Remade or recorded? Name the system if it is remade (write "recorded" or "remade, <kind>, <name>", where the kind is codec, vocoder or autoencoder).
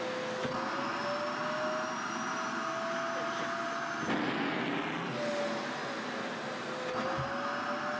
recorded